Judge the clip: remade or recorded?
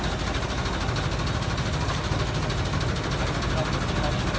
recorded